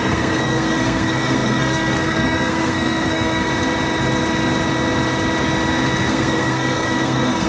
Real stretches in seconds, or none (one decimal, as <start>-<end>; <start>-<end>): 3.5-6.1